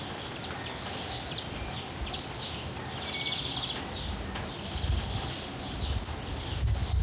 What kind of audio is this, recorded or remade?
recorded